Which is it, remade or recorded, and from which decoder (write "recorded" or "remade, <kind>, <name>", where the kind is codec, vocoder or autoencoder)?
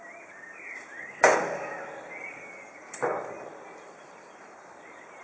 remade, vocoder, BigVGAN v2